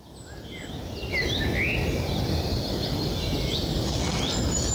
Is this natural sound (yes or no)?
yes